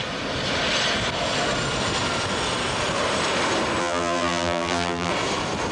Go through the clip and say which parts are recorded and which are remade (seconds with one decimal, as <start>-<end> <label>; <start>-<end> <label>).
0.0-3.8 recorded; 3.8-5.1 remade; 5.1-5.7 recorded